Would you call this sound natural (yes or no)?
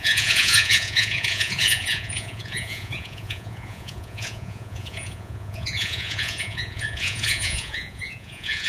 no